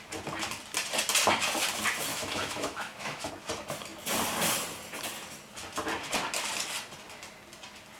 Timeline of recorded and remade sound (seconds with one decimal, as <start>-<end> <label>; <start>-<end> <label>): 0.0-2.1 recorded; 2.1-3.3 remade; 3.3-8.0 recorded